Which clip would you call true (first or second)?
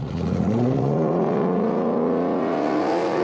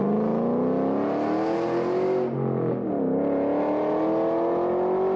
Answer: second